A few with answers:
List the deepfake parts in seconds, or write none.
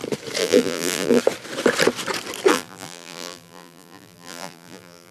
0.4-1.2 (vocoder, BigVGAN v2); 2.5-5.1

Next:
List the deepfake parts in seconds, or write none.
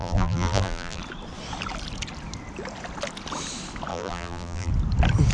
0.0-1.0 (vocoder, BigVGAN v2); 3.9-4.7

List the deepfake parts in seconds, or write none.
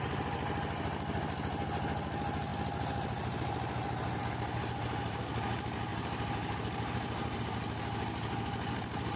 5.9-7.4 (vocoder, BigVGAN v2)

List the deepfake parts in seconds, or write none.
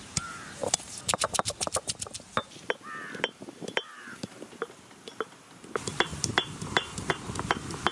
3.9-4.6 (vocoder, BigVGAN v2); 5.9-7.1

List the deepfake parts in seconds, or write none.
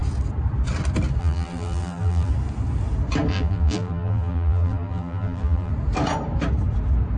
1.2-2.3 (vocoder, BigVGAN v2); 3.3-5.7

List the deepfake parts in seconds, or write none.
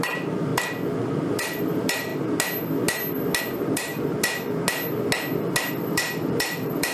0.0-0.5 (vocoder, BigVGAN v2); 1.2-2.1; 3.4-3.9; 5.7-6.9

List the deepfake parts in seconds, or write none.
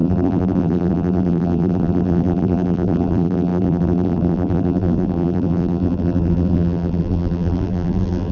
0.0-8.3 (vocoder, BigVGAN v2)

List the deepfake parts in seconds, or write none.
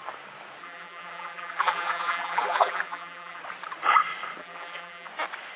0.6-3.4 (vocoder, BigVGAN v2); 4.4-5.1